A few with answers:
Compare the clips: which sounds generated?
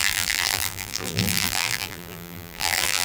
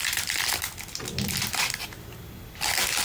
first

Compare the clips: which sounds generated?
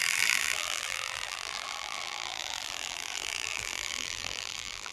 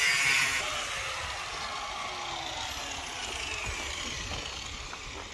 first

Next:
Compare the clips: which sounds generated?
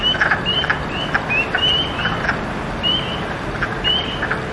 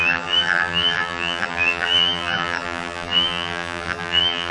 second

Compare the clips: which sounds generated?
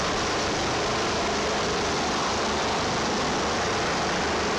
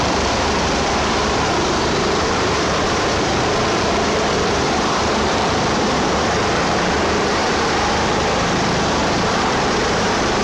second